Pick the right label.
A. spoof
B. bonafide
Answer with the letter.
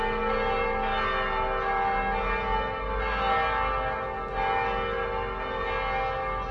B